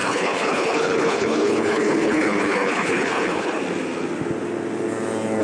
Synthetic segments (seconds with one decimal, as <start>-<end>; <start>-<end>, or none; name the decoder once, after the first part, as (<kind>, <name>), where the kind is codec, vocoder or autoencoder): 0.0-3.6 (codec, HILCodec)